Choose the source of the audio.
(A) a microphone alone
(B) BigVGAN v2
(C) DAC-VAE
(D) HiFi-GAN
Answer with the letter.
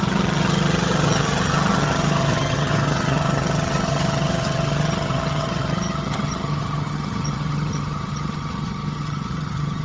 D